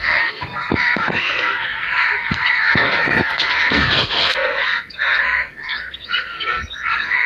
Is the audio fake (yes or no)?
yes